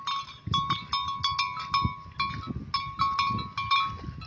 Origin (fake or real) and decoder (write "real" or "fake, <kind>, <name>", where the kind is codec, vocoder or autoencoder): real